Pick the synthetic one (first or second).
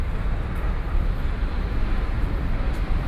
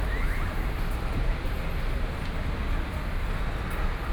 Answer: first